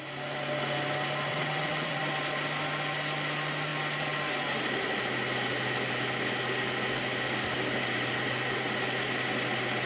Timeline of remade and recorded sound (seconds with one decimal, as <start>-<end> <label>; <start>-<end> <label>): 0.0-1.3 recorded; 1.3-2.0 remade; 2.0-9.9 recorded